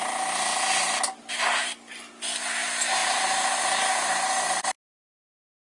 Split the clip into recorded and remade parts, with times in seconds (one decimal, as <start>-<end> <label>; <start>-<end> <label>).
0.0-3.0 recorded; 3.0-3.8 remade; 3.8-5.7 recorded

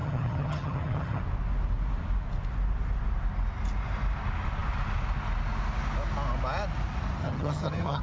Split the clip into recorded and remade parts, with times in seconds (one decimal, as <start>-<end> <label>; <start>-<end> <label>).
0.0-1.2 remade; 1.2-7.2 recorded; 7.2-8.0 remade